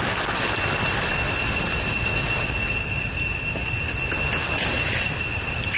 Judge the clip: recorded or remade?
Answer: recorded